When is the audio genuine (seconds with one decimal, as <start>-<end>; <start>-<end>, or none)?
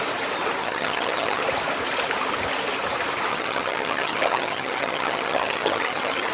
0.0-0.6; 1.4-3.3